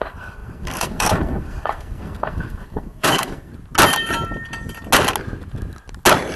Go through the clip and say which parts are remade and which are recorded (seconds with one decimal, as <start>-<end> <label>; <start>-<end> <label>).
0.0-3.5 remade; 3.5-6.4 recorded